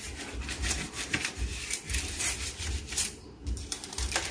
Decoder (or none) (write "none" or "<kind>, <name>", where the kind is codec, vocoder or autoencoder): vocoder, BigVGAN v2